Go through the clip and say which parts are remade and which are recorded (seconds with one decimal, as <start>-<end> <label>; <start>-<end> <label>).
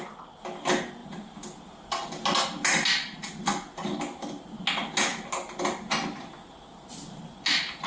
0.0-7.9 recorded